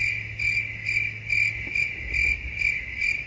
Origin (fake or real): real